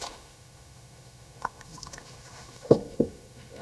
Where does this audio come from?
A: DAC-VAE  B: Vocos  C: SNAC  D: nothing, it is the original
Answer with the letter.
A